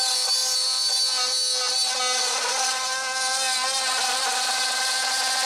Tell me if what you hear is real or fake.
real